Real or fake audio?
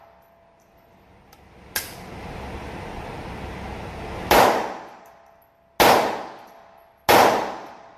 real